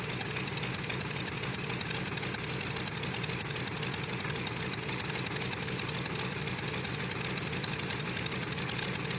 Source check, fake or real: real